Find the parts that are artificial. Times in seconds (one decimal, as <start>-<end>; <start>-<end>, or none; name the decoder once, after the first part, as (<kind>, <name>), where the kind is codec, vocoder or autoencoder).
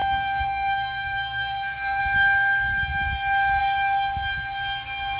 0.0-2.0 (codec, SNAC)